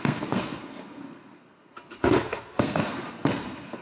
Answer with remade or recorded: remade